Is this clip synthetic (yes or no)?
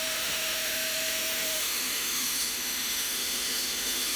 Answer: yes